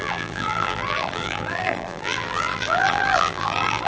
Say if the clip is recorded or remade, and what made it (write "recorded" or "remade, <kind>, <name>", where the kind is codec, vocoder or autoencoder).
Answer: remade, vocoder, BigVGAN v2